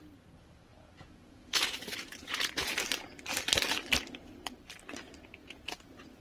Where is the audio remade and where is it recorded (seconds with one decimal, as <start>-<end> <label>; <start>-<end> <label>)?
0.0-0.7 recorded; 0.7-2.7 remade; 2.7-5.4 recorded; 5.4-6.2 remade

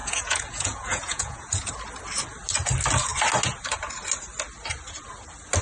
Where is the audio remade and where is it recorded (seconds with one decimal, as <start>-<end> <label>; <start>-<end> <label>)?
0.0-1.7 remade; 1.7-5.6 recorded